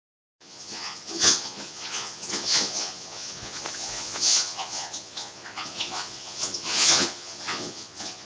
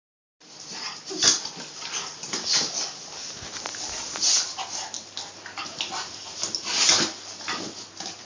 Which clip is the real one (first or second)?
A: second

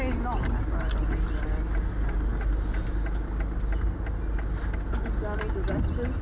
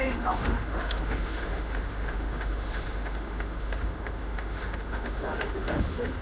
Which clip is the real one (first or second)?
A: first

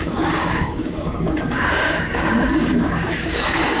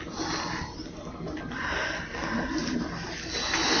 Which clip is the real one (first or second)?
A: second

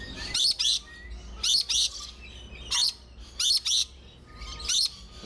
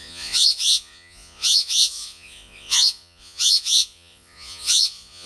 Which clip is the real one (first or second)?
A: first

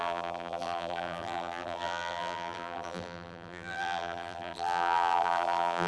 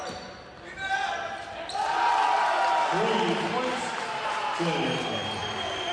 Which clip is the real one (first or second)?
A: second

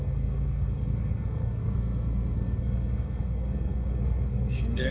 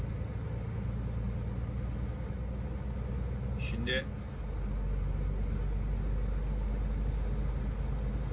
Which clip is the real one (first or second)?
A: second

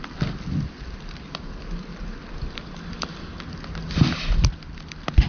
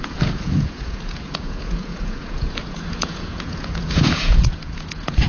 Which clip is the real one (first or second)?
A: first